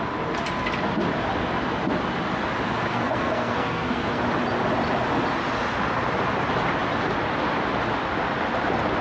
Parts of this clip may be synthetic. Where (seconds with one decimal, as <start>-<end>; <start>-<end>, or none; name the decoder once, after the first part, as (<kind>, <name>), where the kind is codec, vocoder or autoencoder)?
2.9-4.2 (codec, SNAC)